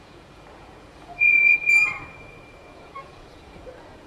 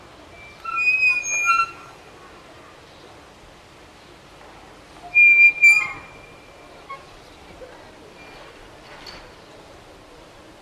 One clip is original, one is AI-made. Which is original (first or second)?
second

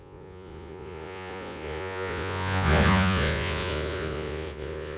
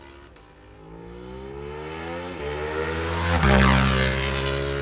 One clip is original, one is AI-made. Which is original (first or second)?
second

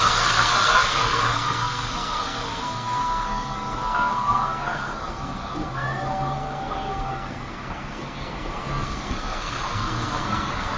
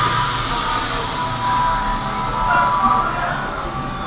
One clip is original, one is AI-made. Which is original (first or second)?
second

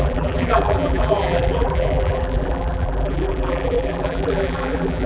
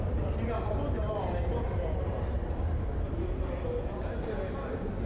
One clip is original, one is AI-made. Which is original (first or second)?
second